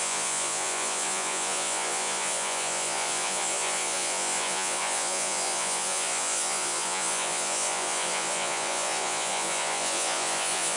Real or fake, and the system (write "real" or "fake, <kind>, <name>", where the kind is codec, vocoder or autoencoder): fake, vocoder, Vocos